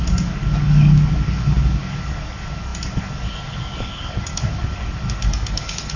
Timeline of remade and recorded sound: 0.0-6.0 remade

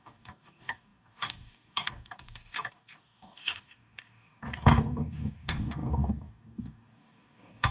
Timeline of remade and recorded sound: 0.0-7.7 remade

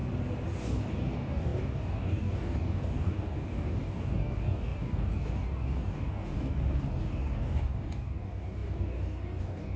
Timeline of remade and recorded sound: 0.0-0.6 recorded; 0.6-9.8 remade